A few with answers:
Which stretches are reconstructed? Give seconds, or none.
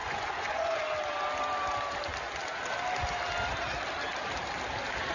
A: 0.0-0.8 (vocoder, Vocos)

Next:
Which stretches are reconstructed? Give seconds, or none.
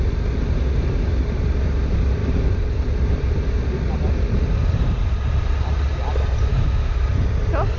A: 6.5-7.0 (autoencoder, DAC-VAE)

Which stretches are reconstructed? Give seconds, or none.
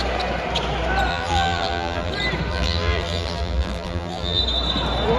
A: 1.1-2.1 (vocoder, BigVGAN v2); 2.5-4.4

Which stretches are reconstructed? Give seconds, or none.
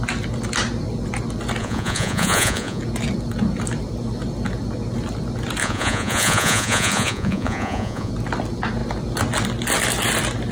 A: 1.6-2.8 (vocoder, Vocos); 5.6-8.1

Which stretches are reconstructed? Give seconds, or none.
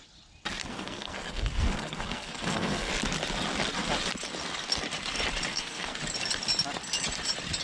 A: 0.6-2.9 (codec, SNAC); 5.5-6.0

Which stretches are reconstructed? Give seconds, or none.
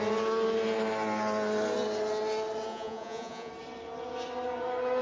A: 2.7-3.5 (vocoder, Vocos)